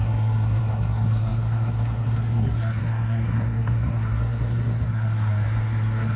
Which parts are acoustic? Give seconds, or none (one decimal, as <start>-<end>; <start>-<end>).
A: none